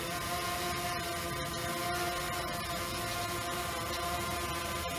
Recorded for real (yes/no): yes